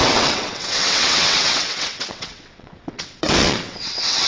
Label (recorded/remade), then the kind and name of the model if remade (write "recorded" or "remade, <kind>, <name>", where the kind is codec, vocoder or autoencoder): remade, vocoder, WaveNeXt